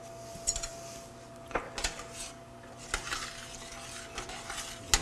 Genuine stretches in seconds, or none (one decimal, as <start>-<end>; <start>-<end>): 0.0-5.0